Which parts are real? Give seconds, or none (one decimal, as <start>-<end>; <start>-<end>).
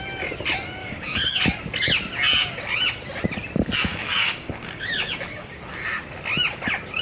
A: 0.0-0.8; 1.4-3.9; 5.6-7.0